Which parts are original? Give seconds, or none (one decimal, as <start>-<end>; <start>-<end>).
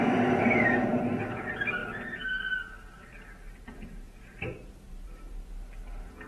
0.0-6.3